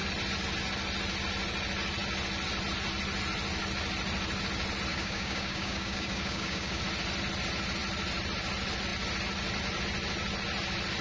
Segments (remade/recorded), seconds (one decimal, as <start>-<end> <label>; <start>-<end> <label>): 0.0-4.9 recorded; 4.9-6.8 remade; 6.8-11.0 recorded